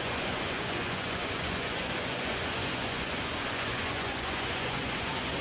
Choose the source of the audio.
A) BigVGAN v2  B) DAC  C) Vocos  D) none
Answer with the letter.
C